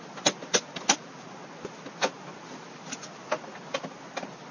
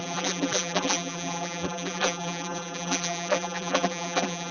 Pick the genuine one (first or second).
first